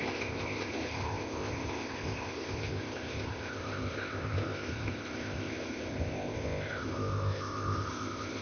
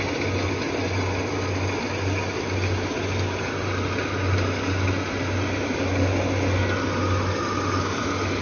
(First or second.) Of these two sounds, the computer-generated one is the first